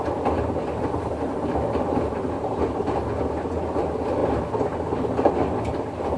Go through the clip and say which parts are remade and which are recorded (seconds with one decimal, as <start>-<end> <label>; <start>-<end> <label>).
0.0-6.2 recorded